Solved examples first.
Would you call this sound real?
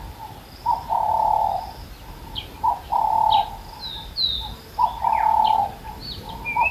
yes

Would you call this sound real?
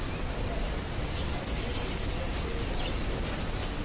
yes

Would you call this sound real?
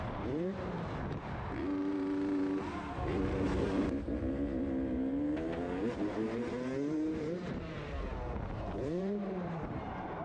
no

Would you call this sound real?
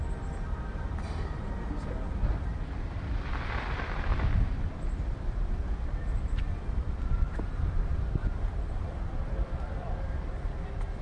no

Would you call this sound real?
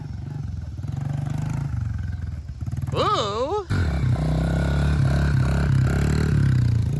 yes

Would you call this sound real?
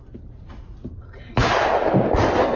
yes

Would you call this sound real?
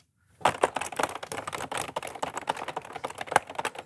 yes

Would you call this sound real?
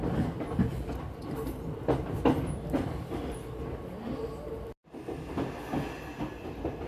yes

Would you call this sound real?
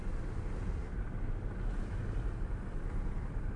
yes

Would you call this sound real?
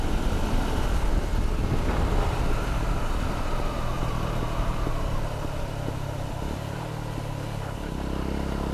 yes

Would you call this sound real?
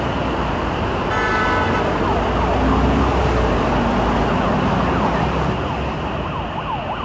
yes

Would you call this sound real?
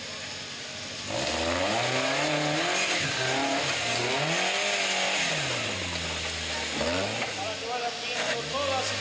yes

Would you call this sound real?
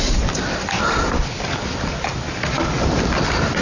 yes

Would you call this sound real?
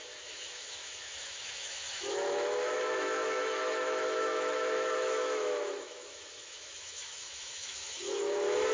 no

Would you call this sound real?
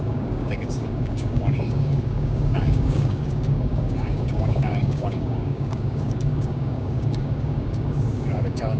no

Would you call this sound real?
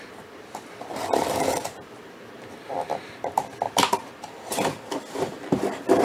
no